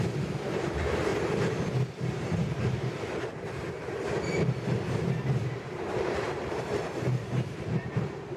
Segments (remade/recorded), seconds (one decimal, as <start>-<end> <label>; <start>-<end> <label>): 0.0-1.1 remade; 1.1-2.2 recorded; 2.2-8.4 remade